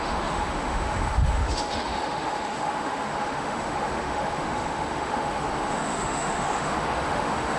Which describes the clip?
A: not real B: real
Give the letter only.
A